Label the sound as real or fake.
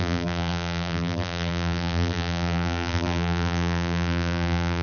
fake